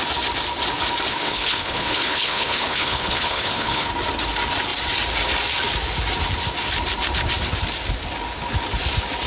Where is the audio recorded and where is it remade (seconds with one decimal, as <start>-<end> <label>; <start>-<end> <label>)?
0.0-1.1 recorded; 1.1-3.9 remade; 3.9-9.3 recorded